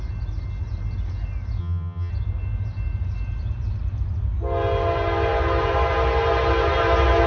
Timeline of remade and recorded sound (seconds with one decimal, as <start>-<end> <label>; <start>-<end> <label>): 0.0-1.6 recorded; 1.6-2.1 remade; 2.1-7.3 recorded